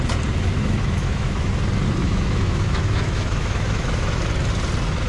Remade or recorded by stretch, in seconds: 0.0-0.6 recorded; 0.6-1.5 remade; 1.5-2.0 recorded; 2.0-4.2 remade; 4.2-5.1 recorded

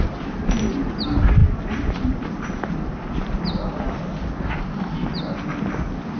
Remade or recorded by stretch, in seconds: 0.0-6.2 recorded

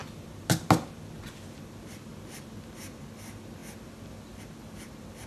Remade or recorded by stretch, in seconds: 0.0-5.3 recorded

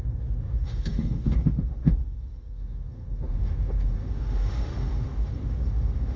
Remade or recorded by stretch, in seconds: 0.0-6.2 remade